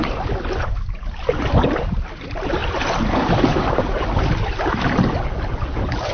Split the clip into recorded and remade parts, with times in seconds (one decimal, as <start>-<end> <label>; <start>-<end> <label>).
0.0-6.1 recorded